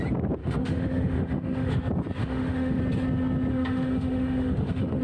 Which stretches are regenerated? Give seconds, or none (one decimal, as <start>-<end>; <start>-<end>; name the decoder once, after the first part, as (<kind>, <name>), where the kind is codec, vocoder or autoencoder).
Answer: 0.4-1.8 (autoencoder, DAC-VAE); 2.2-2.8; 3.5-5.0